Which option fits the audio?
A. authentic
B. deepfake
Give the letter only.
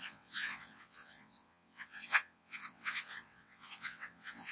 B